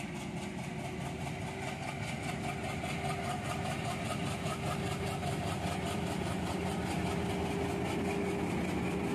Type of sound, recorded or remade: recorded